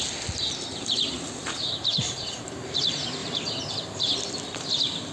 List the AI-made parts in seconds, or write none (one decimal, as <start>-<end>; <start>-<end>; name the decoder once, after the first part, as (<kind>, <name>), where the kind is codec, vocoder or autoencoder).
1.4-2.8 (vocoder, BigVGAN v2); 3.2-4.1